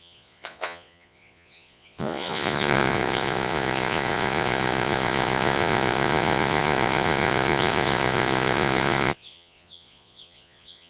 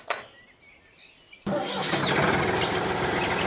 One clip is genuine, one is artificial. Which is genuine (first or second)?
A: second